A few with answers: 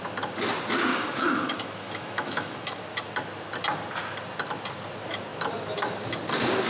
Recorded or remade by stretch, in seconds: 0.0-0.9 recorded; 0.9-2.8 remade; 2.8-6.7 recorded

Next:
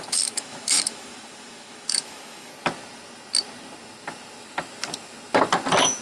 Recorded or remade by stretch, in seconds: 0.0-2.5 remade; 2.5-6.0 recorded

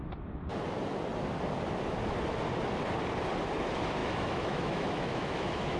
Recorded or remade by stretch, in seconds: 0.0-4.0 recorded; 4.0-5.8 remade

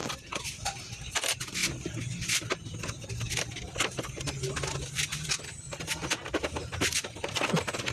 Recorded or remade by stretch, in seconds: 0.0-7.9 recorded

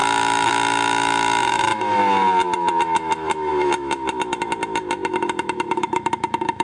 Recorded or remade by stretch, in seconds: 0.0-2.0 remade; 2.0-2.8 recorded; 2.8-6.6 remade

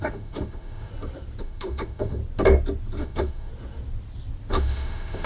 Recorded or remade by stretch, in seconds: 0.0-0.9 remade; 0.9-1.4 recorded; 1.4-2.2 remade; 2.2-3.0 recorded; 3.0-3.5 remade; 3.5-4.5 recorded; 4.5-5.3 remade

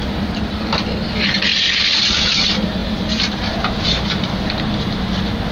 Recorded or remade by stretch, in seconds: 0.0-5.5 recorded

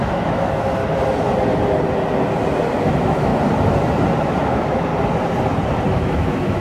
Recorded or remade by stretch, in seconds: 0.0-0.8 remade; 0.8-2.8 recorded; 2.8-3.3 remade; 3.3-4.2 recorded; 4.2-4.9 remade; 4.9-5.9 recorded; 5.9-6.6 remade